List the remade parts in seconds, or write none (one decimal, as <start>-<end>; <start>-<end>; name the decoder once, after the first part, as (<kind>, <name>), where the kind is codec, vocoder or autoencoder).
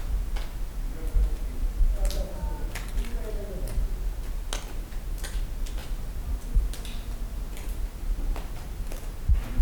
5.8-6.3 (vocoder, BigVGAN v2)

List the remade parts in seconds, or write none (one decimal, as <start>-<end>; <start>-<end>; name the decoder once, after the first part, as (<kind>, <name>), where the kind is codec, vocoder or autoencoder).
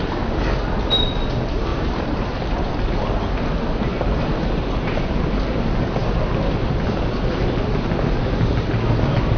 1.7-2.7 (vocoder, BigVGAN v2); 3.9-4.9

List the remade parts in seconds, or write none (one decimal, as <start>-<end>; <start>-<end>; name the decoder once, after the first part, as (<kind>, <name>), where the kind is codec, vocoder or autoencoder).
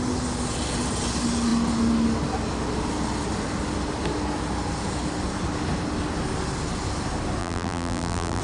7.4-8.4 (vocoder, BigVGAN v2)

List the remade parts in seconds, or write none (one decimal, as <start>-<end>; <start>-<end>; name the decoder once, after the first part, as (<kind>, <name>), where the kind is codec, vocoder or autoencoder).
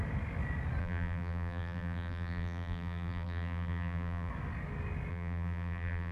0.8-4.3 (vocoder, BigVGAN v2); 5.1-6.1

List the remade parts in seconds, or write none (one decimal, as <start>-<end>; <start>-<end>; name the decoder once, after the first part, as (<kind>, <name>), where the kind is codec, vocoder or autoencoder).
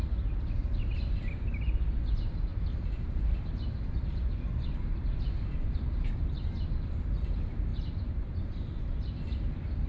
2.5-6.3 (vocoder, BigVGAN v2); 7.7-9.2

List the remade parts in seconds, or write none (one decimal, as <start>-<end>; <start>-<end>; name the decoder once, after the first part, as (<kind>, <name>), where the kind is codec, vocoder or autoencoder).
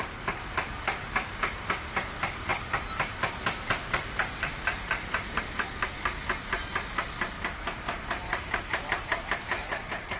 0.0-6.1 (vocoder, BigVGAN v2); 7.7-10.2